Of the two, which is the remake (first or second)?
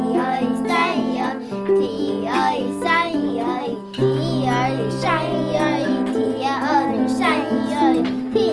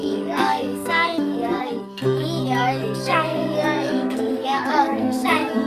second